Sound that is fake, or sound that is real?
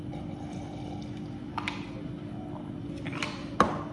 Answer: real